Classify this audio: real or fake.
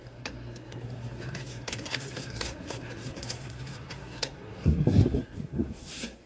fake